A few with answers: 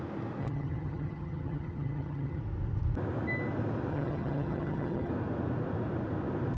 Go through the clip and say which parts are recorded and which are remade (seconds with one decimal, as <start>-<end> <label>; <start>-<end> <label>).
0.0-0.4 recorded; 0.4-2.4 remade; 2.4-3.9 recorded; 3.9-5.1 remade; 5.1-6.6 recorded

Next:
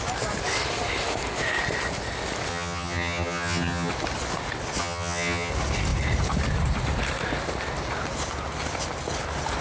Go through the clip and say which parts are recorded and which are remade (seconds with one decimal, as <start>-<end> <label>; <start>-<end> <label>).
0.0-2.5 recorded; 2.5-3.9 remade; 3.9-4.8 recorded; 4.8-5.5 remade; 5.5-9.6 recorded

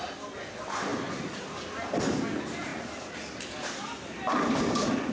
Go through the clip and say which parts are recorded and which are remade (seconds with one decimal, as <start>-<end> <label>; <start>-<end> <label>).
0.0-5.1 recorded

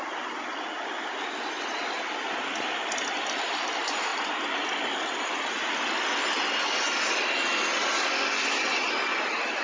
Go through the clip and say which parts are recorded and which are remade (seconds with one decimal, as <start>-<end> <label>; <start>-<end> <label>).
0.0-9.6 recorded

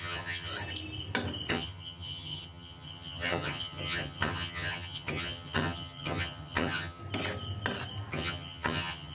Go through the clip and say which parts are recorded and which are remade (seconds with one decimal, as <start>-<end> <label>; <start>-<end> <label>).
0.0-0.5 remade; 0.5-1.5 recorded; 1.5-7.0 remade; 7.0-8.1 recorded; 8.1-9.1 remade

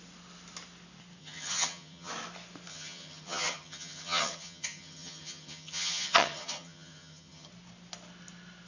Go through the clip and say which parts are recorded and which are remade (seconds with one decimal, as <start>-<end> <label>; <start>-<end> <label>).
0.0-1.2 recorded; 1.2-2.1 remade; 2.1-2.7 recorded; 2.7-7.5 remade; 7.5-8.7 recorded

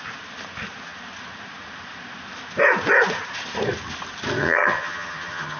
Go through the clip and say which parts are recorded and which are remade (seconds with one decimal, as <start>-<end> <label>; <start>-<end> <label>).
0.0-4.4 recorded; 4.4-5.6 remade

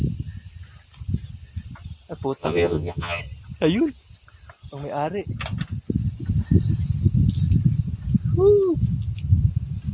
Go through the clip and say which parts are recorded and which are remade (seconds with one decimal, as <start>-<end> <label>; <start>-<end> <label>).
0.0-2.4 recorded; 2.4-3.2 remade; 3.2-9.9 recorded